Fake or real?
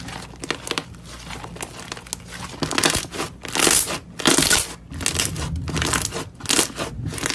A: real